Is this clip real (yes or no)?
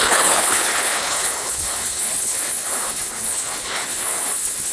no